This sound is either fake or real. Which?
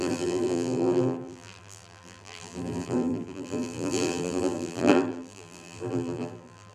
fake